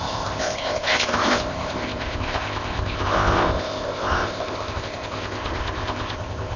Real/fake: fake